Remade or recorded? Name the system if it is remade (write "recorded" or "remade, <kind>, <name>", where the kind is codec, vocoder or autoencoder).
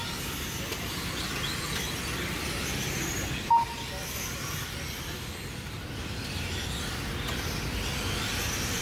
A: recorded